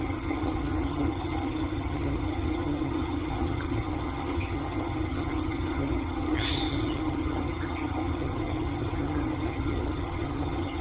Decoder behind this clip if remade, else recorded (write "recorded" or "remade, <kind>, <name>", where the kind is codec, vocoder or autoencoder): remade, vocoder, HiFi-GAN